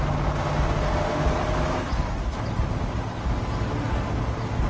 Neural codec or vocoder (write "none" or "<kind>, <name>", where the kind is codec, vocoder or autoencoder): none